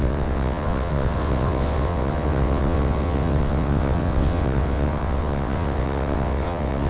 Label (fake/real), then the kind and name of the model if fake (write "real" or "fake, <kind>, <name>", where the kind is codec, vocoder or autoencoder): fake, vocoder, WaveNeXt